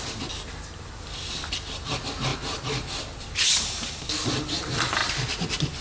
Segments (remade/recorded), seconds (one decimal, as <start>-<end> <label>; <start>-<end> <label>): 0.0-5.8 recorded